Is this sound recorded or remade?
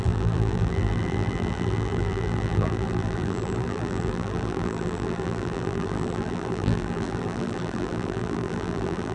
remade